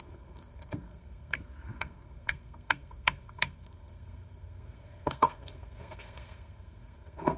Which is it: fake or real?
fake